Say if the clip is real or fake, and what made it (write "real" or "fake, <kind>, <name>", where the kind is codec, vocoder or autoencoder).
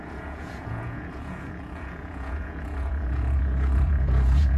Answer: fake, vocoder, Vocos